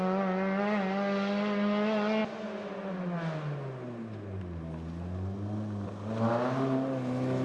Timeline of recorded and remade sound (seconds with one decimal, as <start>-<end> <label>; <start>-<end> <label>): 0.0-7.4 recorded